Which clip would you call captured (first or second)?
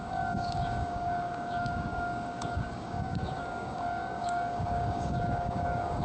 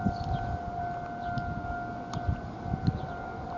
second